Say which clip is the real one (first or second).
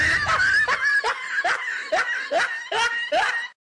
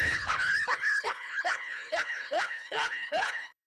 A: first